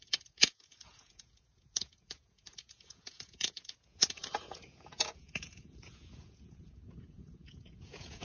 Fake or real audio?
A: fake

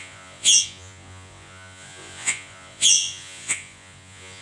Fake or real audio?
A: fake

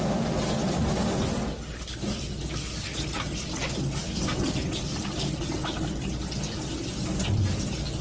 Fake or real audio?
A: real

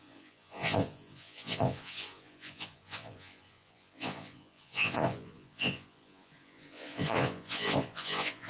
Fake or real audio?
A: fake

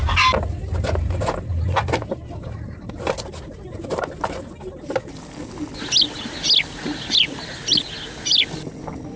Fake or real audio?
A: real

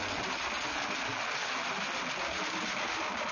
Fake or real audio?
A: real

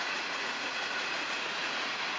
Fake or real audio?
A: fake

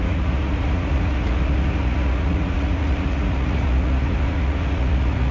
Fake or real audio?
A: fake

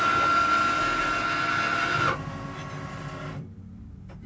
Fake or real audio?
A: real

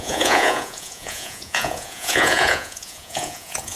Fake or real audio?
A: fake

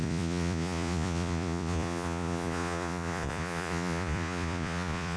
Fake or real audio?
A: fake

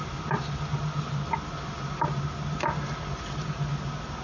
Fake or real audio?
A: real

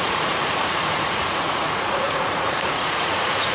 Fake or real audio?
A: fake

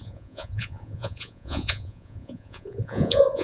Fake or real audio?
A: fake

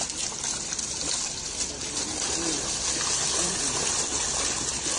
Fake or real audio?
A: real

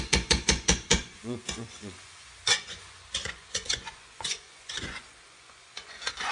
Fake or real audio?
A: fake